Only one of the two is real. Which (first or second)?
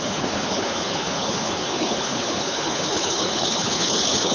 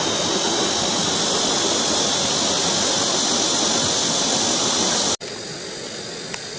second